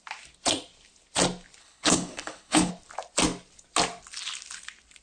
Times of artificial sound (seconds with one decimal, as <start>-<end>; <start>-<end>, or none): 1.6-2.7